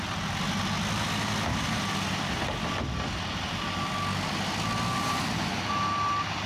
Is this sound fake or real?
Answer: real